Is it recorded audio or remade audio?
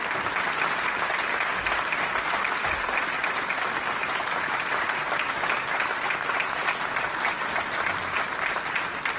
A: recorded